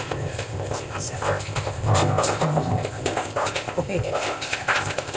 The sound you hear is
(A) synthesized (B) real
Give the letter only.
A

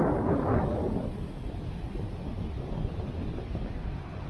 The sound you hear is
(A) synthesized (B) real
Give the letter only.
B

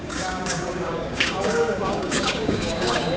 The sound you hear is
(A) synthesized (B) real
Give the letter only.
A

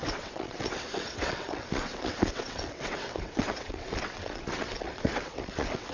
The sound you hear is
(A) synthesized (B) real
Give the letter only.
A